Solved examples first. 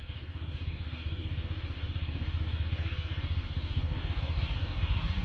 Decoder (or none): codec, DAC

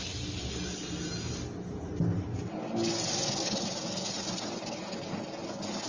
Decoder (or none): none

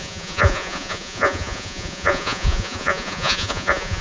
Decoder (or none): vocoder, Vocos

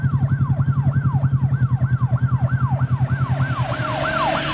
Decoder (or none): none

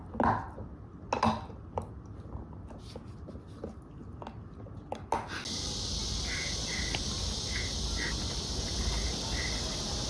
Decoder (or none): none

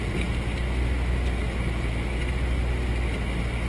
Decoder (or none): none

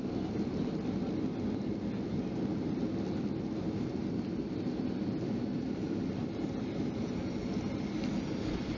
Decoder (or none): none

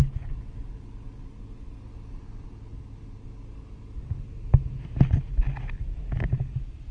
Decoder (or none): none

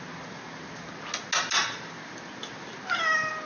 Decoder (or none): none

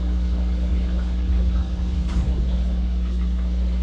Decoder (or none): codec, DAC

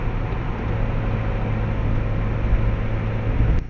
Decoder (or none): none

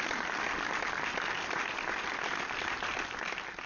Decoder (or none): none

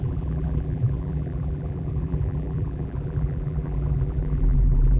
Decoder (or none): vocoder, BigVGAN v2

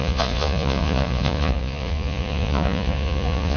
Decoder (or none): vocoder, Vocos